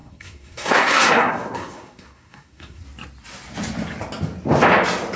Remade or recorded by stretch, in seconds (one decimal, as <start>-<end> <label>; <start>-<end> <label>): 0.0-2.8 remade; 2.8-5.2 recorded